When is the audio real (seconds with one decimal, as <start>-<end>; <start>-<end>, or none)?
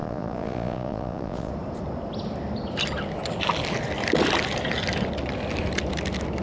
1.5-6.4